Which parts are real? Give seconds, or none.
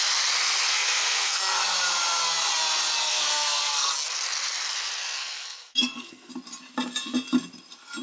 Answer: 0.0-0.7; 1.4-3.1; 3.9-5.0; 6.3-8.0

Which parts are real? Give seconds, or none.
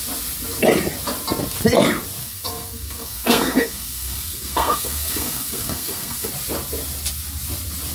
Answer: 0.0-2.2; 6.3-7.9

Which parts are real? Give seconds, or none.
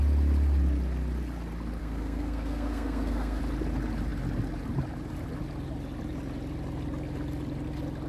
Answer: 0.0-1.8; 3.4-8.1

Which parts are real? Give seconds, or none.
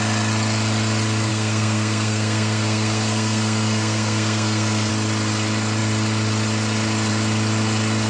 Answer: 0.0-1.3; 4.9-8.1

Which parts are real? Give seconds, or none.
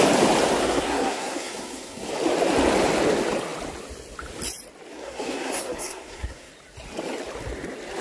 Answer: 0.0-0.6; 2.1-4.9; 6.5-8.0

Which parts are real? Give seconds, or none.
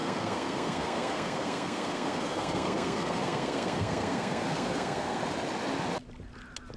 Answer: 5.2-6.8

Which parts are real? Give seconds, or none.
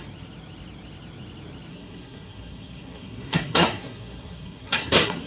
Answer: 0.0-1.7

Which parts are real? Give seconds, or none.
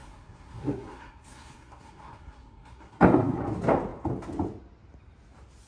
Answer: 3.4-5.7